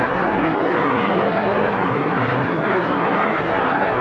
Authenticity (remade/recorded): remade